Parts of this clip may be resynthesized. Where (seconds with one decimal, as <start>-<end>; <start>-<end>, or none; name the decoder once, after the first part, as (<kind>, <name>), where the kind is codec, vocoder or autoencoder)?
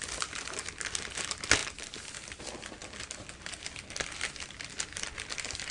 none